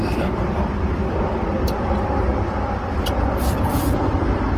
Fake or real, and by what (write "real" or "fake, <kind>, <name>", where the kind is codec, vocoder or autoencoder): fake, vocoder, BigVGAN v2